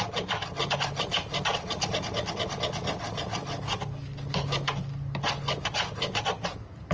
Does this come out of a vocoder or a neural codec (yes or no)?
no